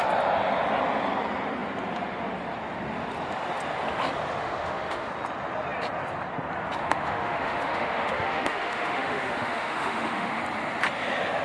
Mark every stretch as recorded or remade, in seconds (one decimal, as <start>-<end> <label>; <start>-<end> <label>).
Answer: 0.0-4.4 recorded; 4.4-5.1 remade; 5.1-6.8 recorded; 6.8-10.4 remade; 10.4-11.4 recorded